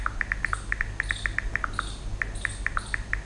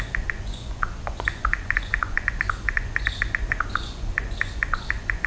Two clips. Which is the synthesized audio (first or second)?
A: second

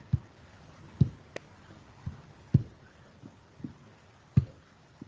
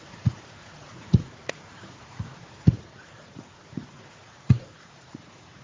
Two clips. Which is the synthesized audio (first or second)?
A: second